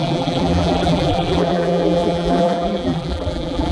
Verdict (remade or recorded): remade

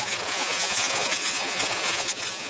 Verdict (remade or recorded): remade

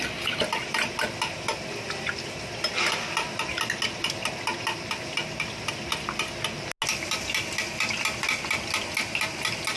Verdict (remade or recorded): recorded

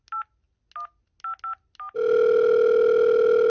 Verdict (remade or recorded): recorded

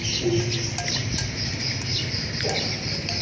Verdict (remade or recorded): recorded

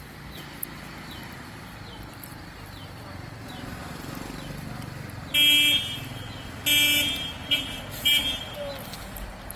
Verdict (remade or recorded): recorded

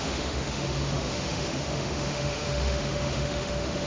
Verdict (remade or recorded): remade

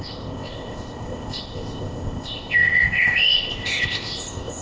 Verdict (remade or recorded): remade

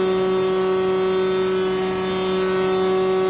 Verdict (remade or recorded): recorded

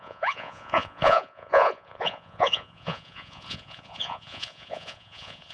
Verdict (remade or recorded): remade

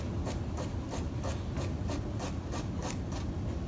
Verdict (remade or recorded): recorded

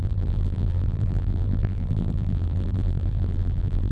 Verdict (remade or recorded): remade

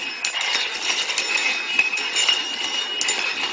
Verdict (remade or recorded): recorded